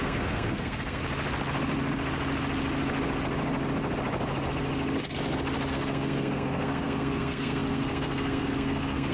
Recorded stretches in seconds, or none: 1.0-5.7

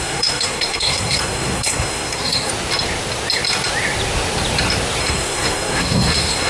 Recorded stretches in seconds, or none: 2.5-5.0